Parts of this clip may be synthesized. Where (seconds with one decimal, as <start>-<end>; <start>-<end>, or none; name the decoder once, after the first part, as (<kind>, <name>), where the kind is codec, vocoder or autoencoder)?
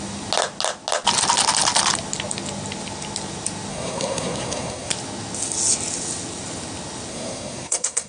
3.7-4.9 (codec, SNAC); 7.1-8.1